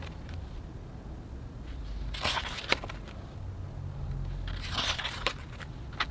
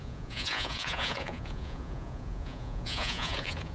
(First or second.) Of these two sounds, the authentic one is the first